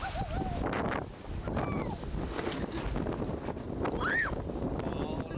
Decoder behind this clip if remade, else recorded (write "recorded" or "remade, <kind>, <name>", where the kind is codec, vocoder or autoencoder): recorded